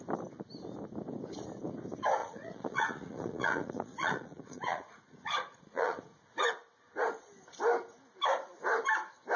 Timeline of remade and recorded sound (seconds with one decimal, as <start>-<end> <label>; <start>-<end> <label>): 0.0-2.2 recorded; 2.2-6.5 remade; 6.5-9.4 recorded